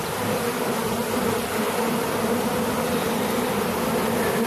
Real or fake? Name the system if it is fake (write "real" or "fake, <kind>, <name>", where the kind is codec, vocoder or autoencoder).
real